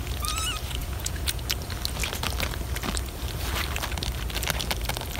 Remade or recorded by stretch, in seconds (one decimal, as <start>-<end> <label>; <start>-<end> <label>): 0.0-0.8 recorded; 0.8-1.4 remade; 1.4-5.2 recorded